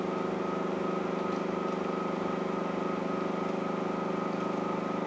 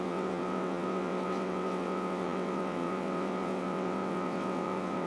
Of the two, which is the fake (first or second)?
second